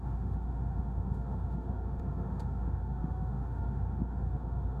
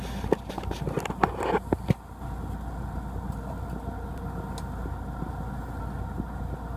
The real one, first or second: second